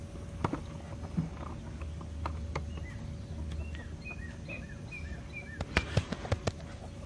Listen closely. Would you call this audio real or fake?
real